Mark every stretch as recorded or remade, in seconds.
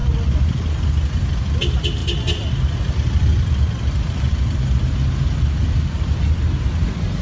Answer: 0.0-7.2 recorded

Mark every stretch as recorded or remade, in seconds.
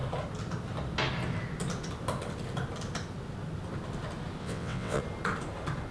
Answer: 0.0-4.4 recorded; 4.4-5.0 remade; 5.0-5.9 recorded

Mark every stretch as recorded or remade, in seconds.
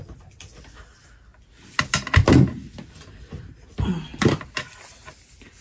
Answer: 0.0-5.6 recorded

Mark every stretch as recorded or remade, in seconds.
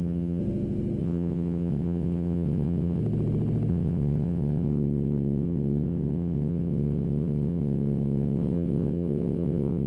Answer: 0.0-0.4 remade; 0.4-1.0 recorded; 1.0-3.0 remade; 3.0-3.7 recorded; 3.7-9.9 remade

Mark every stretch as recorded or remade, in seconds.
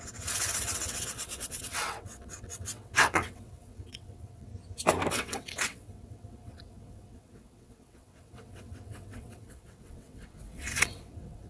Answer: 0.0-4.5 remade; 4.5-5.1 recorded; 5.1-11.5 remade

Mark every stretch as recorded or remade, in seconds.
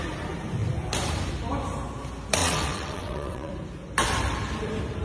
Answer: 0.0-2.4 recorded; 2.4-3.5 remade; 3.5-5.0 recorded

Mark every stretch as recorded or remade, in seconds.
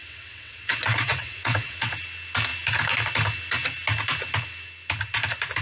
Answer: 0.0-1.9 remade; 1.9-5.6 recorded